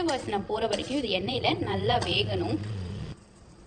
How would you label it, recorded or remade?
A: remade